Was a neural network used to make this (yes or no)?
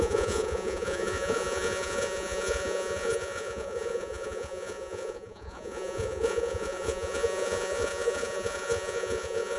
yes